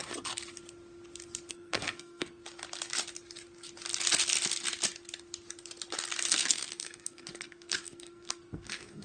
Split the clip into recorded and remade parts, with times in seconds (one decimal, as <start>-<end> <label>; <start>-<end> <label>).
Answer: 0.0-1.5 recorded; 1.5-2.4 remade; 2.4-6.3 recorded; 6.3-9.0 remade